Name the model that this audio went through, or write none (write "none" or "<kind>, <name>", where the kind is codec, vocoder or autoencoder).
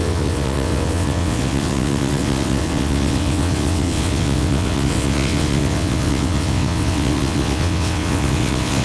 vocoder, WaveNeXt